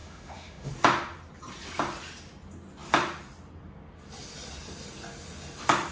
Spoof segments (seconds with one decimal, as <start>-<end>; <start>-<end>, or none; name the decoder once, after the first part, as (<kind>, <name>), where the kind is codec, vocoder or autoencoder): 0.0-0.7 (autoencoder, DAC-VAE)